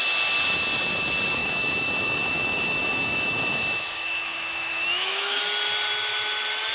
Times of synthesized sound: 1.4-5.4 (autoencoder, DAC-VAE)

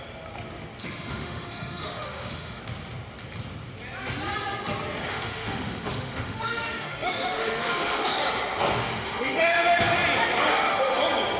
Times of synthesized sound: 0.8-2.6 (autoencoder, DAC-VAE); 5.1-8.2; 8.8-9.8; 10.5-11.0